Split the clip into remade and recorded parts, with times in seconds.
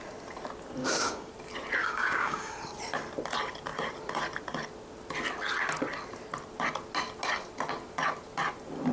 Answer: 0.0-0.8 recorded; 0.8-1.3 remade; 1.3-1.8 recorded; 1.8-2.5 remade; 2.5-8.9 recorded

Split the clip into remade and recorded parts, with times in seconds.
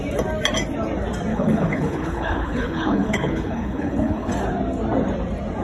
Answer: 0.0-1.3 recorded; 1.3-4.3 remade; 4.3-5.6 recorded